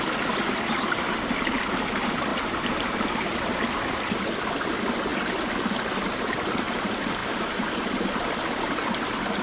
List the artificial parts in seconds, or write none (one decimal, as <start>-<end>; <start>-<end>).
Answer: none